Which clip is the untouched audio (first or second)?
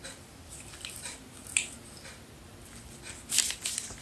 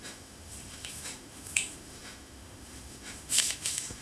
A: first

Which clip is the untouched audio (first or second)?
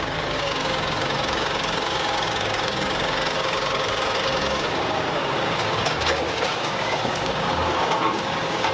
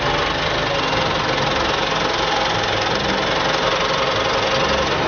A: second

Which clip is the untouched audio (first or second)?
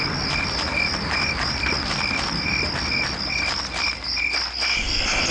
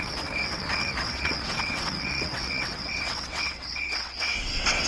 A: first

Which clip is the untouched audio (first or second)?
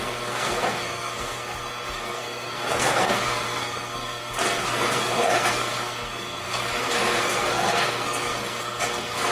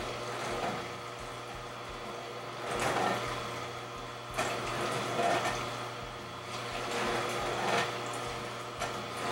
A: second